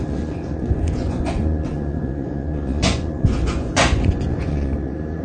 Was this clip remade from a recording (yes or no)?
yes